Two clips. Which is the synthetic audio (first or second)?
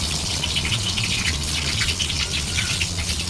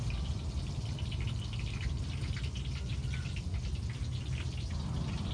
first